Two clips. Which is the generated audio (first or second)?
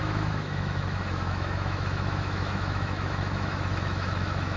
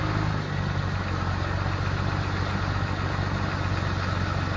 first